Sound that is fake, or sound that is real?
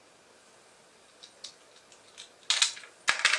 real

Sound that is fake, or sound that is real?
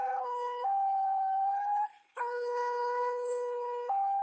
fake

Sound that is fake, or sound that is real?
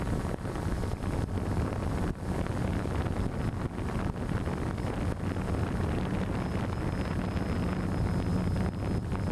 real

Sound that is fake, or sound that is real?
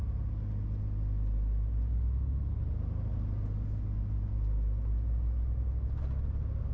real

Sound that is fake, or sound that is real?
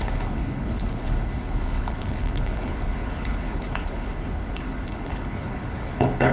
fake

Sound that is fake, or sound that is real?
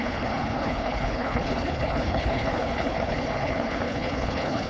fake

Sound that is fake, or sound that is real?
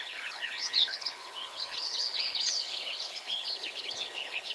fake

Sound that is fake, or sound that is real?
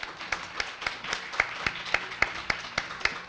real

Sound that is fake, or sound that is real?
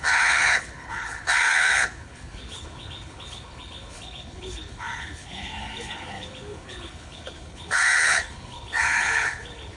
fake